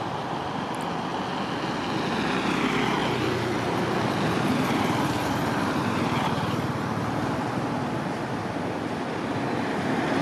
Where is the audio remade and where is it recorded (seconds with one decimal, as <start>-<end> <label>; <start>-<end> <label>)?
0.0-1.1 remade; 1.1-2.2 recorded; 2.2-3.0 remade; 3.0-3.8 recorded; 3.8-10.2 remade